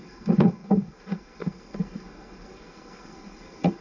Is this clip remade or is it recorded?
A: remade